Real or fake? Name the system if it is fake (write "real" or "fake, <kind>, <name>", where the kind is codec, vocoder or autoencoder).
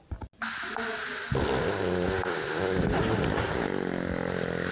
real